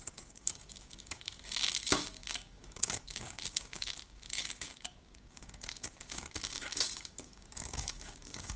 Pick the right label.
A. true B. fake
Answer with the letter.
B